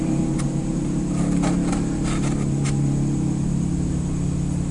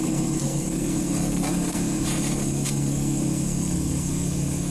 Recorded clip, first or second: first